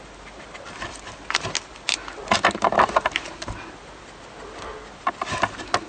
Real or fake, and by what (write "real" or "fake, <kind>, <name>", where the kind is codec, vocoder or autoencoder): real